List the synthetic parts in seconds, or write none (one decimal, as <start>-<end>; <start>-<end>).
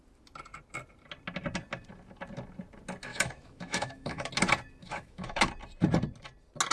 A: 3.1-4.3; 4.8-5.5